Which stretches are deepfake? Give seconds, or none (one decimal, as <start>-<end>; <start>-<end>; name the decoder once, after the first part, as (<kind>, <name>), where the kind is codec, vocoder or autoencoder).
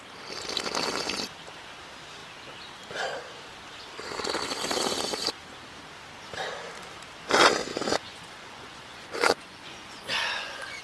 7.7-10.8 (vocoder, Vocos)